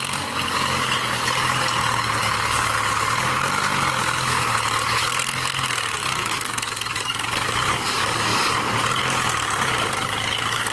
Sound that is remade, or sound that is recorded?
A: remade